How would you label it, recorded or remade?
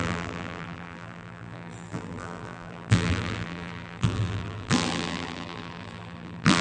remade